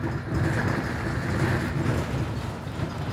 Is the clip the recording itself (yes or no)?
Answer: yes